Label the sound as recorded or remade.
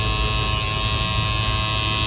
recorded